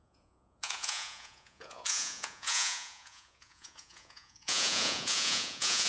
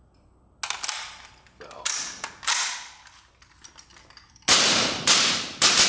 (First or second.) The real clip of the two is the second